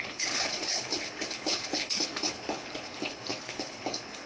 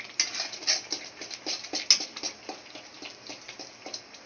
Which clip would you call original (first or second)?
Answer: second